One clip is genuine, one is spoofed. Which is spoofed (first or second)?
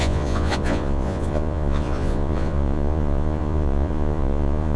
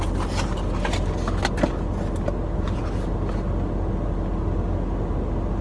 first